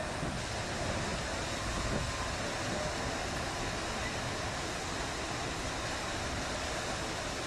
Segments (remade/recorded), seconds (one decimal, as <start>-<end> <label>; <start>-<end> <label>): 0.0-7.5 recorded